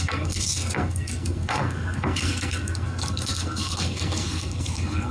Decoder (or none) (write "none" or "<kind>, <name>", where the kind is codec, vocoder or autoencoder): codec, SNAC